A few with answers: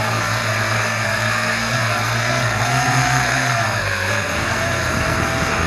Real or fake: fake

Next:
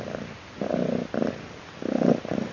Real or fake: real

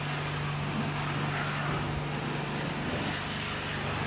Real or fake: real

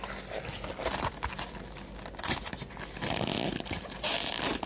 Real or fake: real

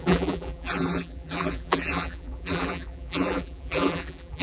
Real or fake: fake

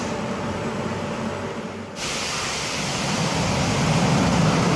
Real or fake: real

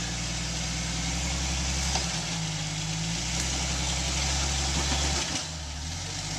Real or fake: real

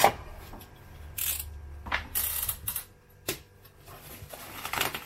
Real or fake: real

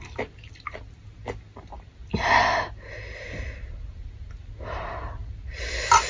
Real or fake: real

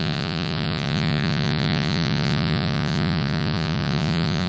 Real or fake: fake